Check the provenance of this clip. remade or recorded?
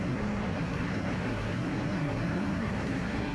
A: remade